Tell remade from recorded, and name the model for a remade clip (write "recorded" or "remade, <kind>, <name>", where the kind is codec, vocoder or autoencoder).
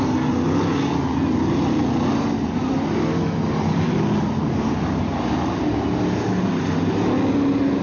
recorded